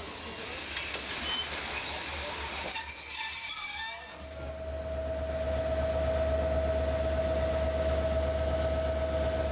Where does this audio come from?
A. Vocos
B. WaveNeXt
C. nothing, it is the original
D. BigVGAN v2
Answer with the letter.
C